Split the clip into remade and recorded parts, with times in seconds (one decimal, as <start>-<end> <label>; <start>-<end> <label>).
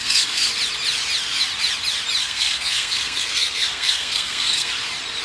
0.0-0.5 remade; 0.5-2.2 recorded; 2.2-4.7 remade; 4.7-5.2 recorded